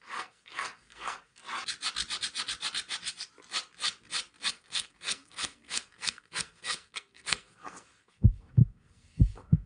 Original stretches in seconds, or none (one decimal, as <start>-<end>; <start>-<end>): 1.4-4.5